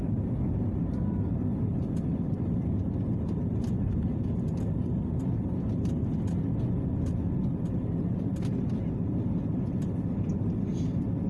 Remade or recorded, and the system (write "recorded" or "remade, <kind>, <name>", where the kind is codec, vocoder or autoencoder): recorded